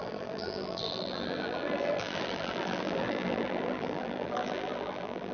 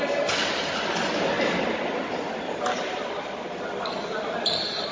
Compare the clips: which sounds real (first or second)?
second